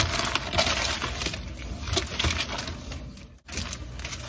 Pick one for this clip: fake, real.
real